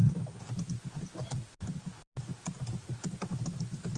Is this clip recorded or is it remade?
recorded